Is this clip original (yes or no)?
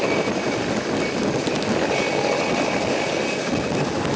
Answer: yes